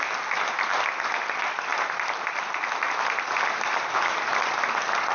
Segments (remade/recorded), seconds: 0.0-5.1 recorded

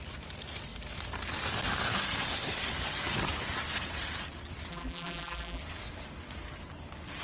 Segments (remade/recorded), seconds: 0.0-4.7 recorded; 4.7-5.6 remade; 5.6-7.2 recorded